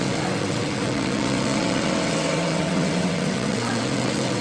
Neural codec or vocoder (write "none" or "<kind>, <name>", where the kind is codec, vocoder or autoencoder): vocoder, WaveNeXt